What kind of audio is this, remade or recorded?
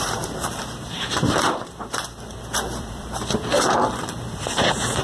remade